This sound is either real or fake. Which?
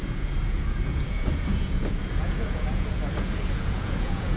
fake